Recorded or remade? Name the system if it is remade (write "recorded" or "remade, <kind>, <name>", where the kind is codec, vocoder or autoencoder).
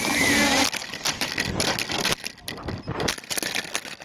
recorded